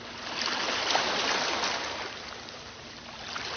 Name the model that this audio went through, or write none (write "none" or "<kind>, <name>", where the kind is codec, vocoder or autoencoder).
none